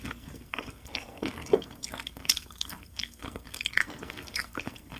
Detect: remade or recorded remade